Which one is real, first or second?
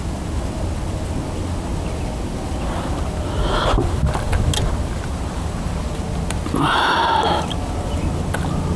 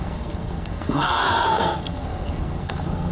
first